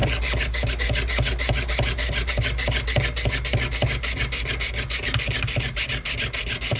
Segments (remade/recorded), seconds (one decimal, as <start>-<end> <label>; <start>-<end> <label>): 0.0-6.8 recorded